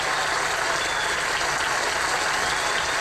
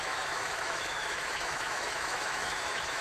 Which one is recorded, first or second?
first